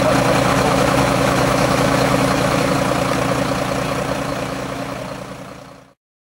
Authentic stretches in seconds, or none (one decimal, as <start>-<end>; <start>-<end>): 0.0-0.5; 2.7-4.3; 5.0-6.3